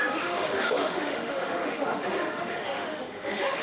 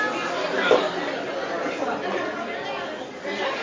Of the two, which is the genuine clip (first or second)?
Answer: second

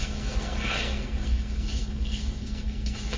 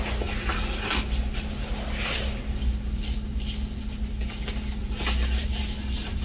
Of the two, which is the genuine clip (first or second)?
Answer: second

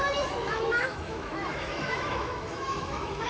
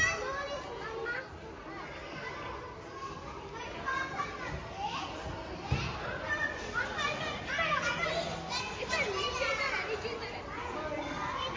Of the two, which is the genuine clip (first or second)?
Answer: second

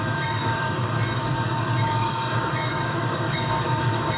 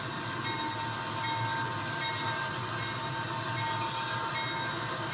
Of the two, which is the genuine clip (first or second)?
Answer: second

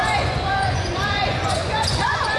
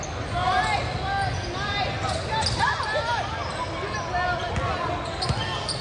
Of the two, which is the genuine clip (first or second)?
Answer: second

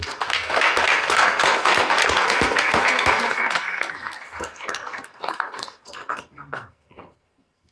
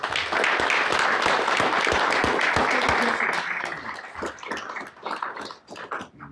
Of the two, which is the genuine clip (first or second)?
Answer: second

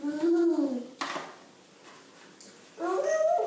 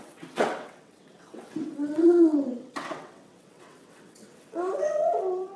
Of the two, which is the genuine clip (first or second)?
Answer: first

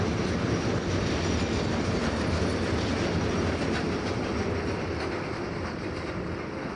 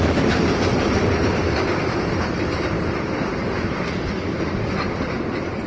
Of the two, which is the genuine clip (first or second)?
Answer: first